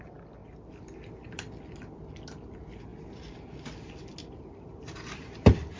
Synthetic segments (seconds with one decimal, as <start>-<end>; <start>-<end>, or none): none